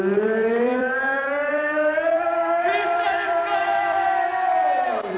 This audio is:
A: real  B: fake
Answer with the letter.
B